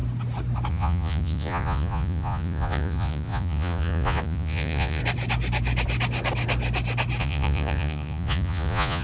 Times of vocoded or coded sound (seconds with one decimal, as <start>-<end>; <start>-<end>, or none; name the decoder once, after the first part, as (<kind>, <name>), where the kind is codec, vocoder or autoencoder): 0.7-5.0 (vocoder, Vocos); 7.2-9.0